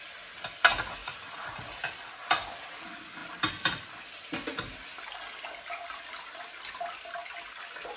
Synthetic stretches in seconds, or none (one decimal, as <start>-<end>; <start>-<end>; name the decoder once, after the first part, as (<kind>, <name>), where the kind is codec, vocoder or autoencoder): 1.0-1.6 (vocoder, Vocos)